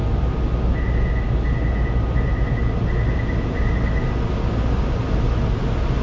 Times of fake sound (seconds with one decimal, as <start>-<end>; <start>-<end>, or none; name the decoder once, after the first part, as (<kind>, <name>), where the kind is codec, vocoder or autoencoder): none